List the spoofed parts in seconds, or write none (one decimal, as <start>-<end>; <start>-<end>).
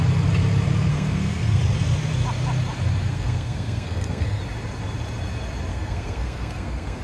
0.9-1.6; 3.1-4.4; 5.7-7.0